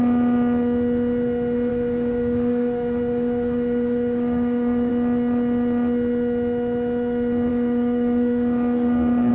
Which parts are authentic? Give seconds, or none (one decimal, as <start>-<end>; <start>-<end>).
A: 0.0-1.7; 4.9-7.5